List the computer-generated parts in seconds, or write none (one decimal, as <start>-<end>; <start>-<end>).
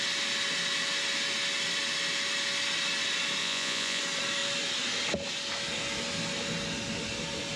3.4-4.0